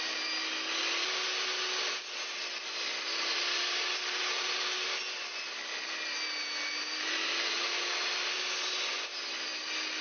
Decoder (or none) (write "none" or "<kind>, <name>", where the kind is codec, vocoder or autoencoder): none